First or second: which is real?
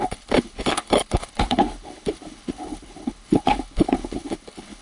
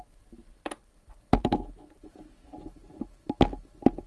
second